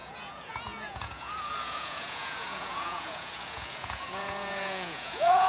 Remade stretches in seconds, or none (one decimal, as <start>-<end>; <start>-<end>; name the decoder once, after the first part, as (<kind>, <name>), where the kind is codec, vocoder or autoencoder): 0.0-5.5 (vocoder, Vocos)